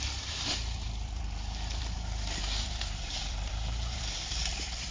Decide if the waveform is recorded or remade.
remade